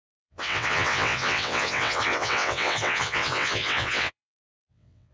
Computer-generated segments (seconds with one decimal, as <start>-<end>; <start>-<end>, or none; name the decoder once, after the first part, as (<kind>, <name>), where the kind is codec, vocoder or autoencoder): 0.0-5.1 (vocoder, WaveNeXt)